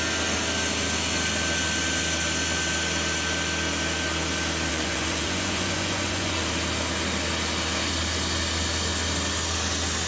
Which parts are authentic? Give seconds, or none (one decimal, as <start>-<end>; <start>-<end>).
0.0-4.7; 6.4-10.1